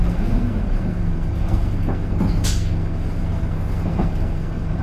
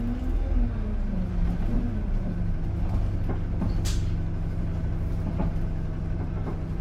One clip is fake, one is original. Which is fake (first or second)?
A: first